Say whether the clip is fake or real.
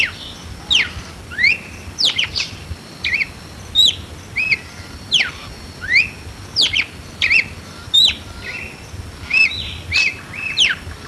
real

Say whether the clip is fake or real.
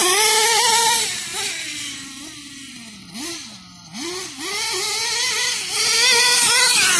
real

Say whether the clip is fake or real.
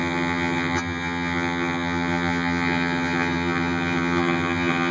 fake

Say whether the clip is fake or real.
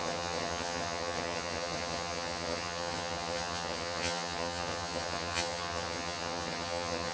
fake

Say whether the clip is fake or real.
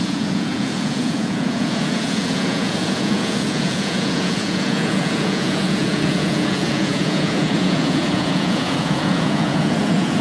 fake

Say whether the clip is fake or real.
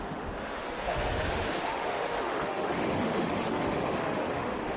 fake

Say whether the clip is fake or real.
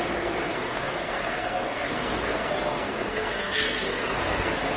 fake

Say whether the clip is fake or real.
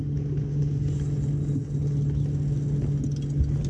real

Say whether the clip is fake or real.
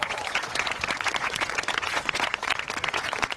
fake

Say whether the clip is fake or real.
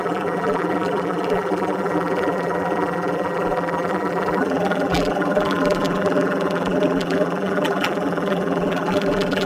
fake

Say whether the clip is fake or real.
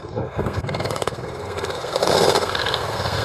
fake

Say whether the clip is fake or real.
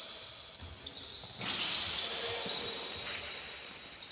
real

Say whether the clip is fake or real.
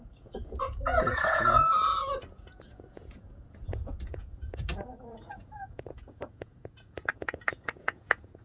fake